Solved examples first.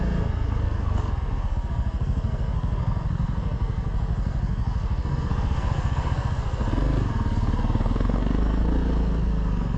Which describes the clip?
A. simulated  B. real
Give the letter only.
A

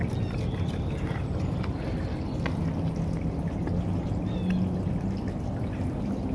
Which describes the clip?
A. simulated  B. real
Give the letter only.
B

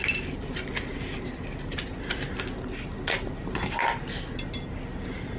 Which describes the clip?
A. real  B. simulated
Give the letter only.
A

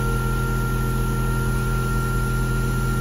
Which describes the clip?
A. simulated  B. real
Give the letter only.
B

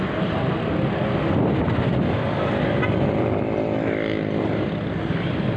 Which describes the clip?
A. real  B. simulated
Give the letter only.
A